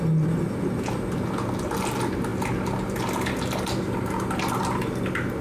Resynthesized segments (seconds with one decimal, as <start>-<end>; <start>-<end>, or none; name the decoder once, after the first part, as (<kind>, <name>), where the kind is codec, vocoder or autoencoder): none